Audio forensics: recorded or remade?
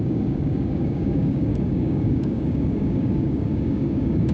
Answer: remade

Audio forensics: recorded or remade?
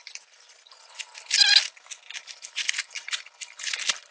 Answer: recorded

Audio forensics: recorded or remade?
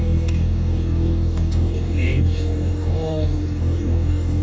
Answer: remade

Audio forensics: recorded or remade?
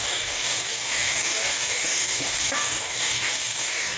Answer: remade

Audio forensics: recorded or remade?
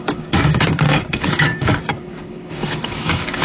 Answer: remade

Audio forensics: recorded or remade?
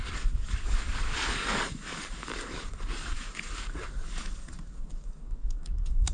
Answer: remade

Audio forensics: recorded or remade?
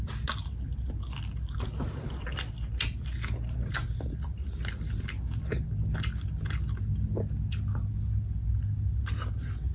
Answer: recorded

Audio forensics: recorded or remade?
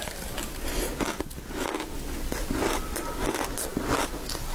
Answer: recorded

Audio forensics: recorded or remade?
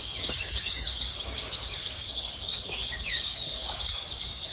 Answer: remade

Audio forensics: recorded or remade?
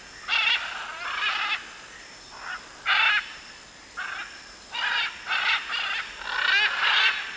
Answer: recorded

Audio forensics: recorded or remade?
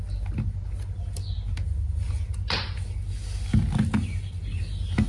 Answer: recorded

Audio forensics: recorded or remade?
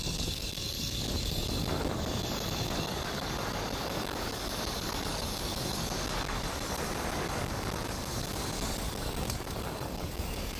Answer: remade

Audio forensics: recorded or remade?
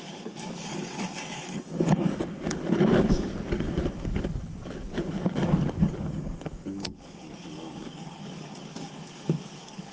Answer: remade